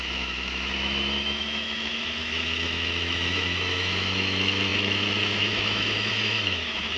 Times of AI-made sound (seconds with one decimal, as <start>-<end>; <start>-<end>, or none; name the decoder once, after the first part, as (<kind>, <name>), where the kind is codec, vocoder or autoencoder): 0.0-7.0 (autoencoder, DAC-VAE)